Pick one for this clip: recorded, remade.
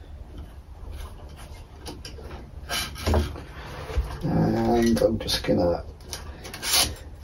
recorded